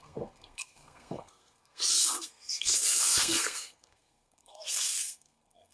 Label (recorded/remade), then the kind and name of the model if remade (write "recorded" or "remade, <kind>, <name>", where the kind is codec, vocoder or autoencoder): remade, codec, SNAC